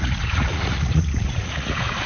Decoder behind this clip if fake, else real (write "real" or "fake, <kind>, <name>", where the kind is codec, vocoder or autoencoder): fake, vocoder, Vocos